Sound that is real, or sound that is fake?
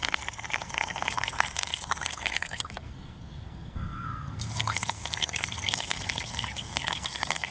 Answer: fake